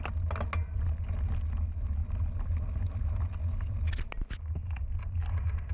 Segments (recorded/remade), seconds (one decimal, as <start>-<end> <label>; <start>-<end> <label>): 0.0-5.7 recorded